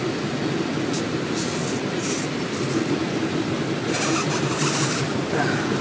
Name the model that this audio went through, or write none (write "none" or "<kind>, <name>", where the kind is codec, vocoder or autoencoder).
none